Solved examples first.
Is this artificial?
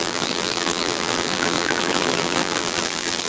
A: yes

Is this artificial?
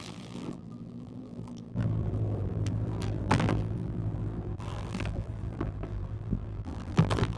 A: yes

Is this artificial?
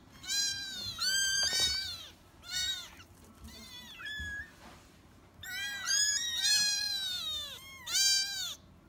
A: yes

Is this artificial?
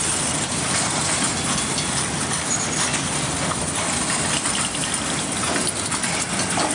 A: no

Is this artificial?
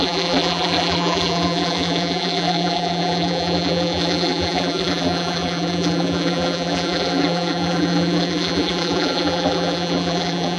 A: yes